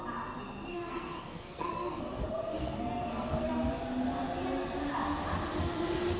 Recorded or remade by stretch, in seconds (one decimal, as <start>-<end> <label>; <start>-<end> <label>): 0.0-0.7 recorded; 0.7-3.5 remade; 3.5-6.2 recorded